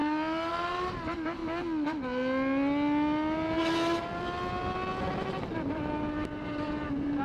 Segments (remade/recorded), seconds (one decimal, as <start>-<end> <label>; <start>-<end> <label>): 0.0-0.5 recorded; 0.5-1.4 remade; 1.4-5.5 recorded; 5.5-7.2 remade